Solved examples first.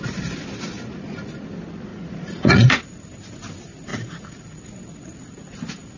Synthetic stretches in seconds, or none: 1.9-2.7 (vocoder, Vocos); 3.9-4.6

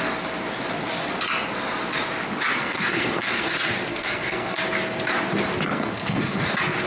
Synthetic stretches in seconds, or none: 2.6-3.5 (codec, SNAC); 3.9-4.6; 5.7-6.4

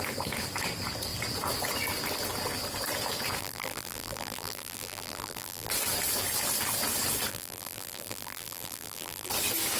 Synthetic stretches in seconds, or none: 3.4-5.7 (vocoder, BigVGAN v2); 7.3-9.3

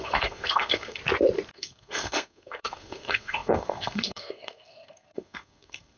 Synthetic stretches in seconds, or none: 0.0-1.0 (codec, SNAC); 1.5-6.0

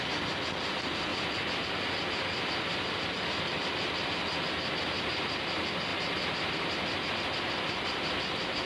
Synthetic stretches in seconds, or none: 1.1-1.6 (vocoder, BigVGAN v2); 5.9-7.1

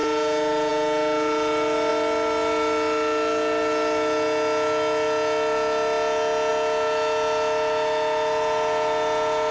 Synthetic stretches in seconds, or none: none